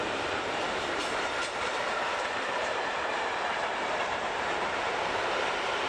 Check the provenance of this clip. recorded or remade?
remade